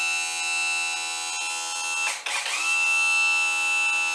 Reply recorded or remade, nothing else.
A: recorded